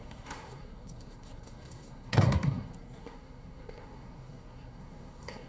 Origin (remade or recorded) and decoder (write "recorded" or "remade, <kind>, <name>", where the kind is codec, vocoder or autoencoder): remade, codec, SNAC